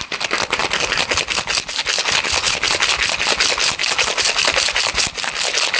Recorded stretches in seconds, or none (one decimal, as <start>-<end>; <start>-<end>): 0.0-5.8